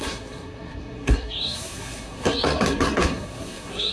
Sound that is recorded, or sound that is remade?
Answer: remade